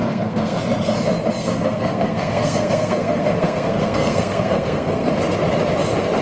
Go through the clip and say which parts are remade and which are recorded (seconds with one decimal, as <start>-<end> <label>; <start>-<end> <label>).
0.0-0.6 remade; 0.6-1.4 recorded; 1.4-5.1 remade; 5.1-6.2 recorded

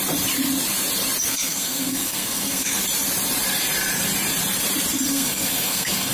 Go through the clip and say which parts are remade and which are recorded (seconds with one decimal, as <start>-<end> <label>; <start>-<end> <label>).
0.0-1.3 recorded; 1.3-2.8 remade; 2.8-5.1 recorded; 5.1-6.1 remade

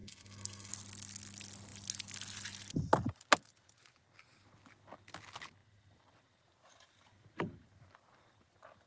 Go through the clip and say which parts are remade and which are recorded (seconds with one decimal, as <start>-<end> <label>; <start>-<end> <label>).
0.0-0.7 remade; 0.7-8.9 recorded

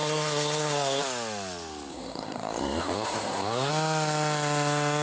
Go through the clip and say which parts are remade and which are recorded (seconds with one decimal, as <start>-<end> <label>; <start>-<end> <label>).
0.0-1.0 remade; 1.0-1.9 recorded; 1.9-3.7 remade; 3.7-5.0 recorded

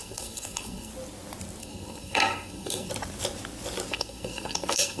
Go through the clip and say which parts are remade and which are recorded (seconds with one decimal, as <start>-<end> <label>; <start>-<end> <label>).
0.0-0.9 remade; 0.9-1.6 recorded; 1.6-2.9 remade; 2.9-3.9 recorded; 3.9-5.0 remade

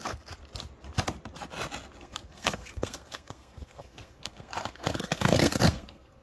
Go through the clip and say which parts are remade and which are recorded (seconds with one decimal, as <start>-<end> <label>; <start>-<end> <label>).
0.0-0.4 remade; 0.4-2.0 recorded; 2.0-6.2 remade

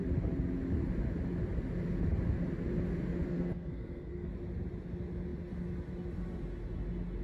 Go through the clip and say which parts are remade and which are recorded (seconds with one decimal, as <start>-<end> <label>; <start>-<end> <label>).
0.0-3.3 recorded; 3.3-4.3 remade; 4.3-7.2 recorded